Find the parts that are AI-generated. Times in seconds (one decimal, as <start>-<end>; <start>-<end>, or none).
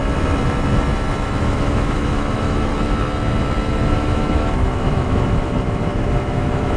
1.4-2.7; 3.9-6.8